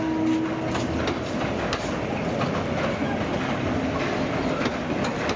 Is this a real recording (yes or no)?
yes